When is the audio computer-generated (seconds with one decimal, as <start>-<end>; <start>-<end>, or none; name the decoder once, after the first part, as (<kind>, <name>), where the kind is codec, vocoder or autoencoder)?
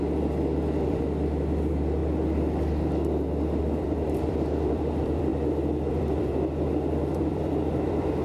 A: 0.0-2.0 (vocoder, BigVGAN v2); 3.6-8.2